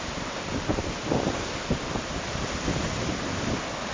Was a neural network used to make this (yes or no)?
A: no